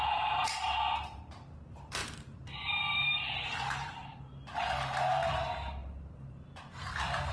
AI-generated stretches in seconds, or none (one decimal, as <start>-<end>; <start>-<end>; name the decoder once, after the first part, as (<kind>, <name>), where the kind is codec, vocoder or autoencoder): 0.0-4.3 (vocoder, BigVGAN v2); 5.1-7.3